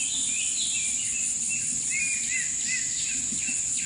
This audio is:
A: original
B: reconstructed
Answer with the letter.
A